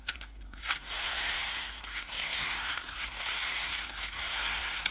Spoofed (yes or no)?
yes